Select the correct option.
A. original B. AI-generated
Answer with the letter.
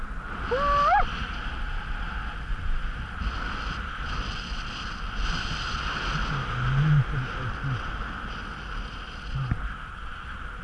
A